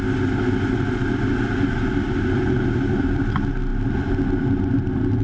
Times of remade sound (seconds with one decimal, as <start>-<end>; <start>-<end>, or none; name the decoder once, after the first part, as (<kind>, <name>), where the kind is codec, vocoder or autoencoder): none